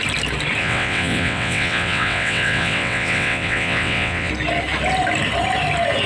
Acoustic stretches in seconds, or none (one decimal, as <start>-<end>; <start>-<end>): 0.0-0.6; 4.3-6.1